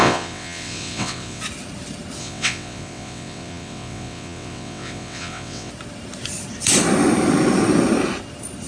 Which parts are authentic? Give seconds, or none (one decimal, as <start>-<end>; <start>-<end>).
1.4-2.2; 5.7-8.7